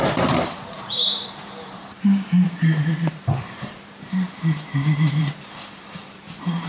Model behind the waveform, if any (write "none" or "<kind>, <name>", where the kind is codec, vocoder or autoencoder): vocoder, BigVGAN v2